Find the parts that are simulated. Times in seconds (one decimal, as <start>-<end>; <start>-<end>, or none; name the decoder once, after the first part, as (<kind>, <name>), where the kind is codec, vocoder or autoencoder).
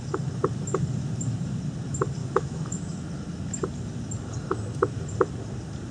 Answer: 2.2-2.8 (autoencoder, DAC-VAE)